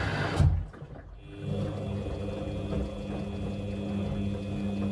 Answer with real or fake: real